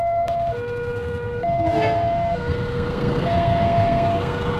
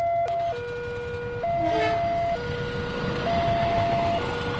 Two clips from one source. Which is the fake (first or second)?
first